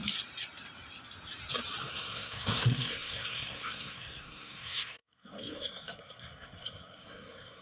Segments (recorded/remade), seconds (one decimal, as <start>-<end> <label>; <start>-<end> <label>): 0.0-1.8 recorded; 1.8-7.6 remade